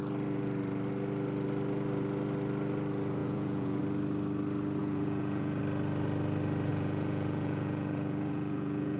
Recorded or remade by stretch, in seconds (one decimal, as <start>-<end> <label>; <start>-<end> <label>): 0.0-3.2 recorded; 3.2-3.8 remade; 3.8-4.8 recorded; 4.8-5.6 remade; 5.6-6.7 recorded; 6.7-9.0 remade